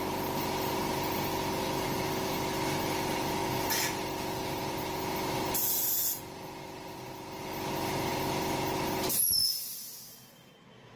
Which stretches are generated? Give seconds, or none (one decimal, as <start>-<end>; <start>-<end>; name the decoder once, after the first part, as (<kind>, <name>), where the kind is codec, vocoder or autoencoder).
none